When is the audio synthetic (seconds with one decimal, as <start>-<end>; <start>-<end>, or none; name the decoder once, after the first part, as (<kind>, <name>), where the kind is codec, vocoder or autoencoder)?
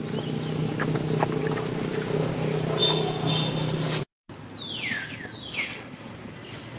none